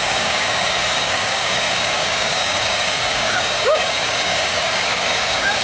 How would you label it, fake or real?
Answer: fake